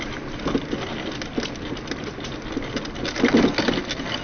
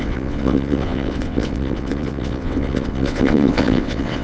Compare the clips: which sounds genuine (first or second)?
first